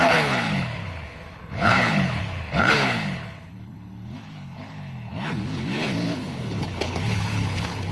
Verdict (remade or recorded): remade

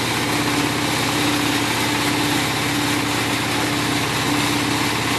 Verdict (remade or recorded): recorded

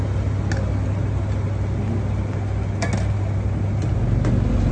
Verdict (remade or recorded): recorded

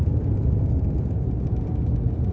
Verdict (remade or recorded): recorded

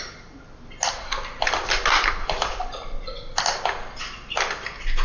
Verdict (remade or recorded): recorded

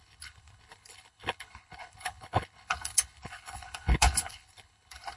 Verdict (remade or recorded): remade